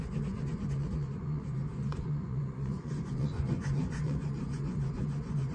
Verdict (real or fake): fake